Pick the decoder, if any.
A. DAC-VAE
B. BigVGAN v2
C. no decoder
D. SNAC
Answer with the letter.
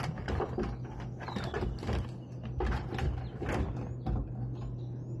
C